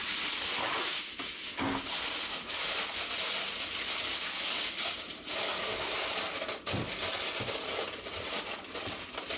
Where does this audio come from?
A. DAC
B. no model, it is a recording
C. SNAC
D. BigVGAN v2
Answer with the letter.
B